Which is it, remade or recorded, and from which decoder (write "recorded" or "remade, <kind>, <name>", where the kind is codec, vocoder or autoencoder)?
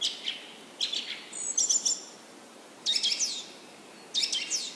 recorded